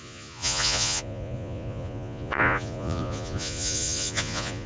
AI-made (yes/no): yes